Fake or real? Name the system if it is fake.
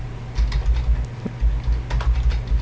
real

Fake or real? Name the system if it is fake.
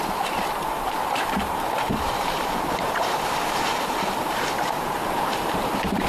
fake, vocoder, BigVGAN v2